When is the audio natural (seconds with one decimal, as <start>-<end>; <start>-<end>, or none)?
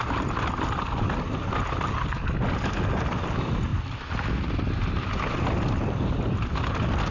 0.0-7.1